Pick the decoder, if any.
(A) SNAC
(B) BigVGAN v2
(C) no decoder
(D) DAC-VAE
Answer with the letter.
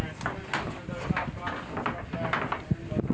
C